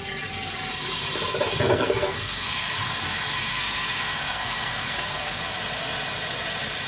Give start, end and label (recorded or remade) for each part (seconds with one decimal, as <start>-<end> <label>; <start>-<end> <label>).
0.0-1.5 recorded; 1.5-2.7 remade; 2.7-3.5 recorded; 3.5-5.4 remade; 5.4-6.9 recorded